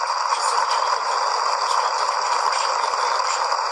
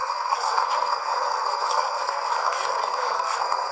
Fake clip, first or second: second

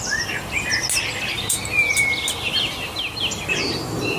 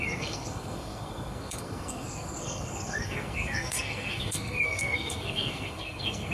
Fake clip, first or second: second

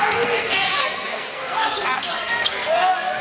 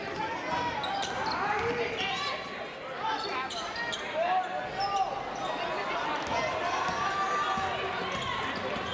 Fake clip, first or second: first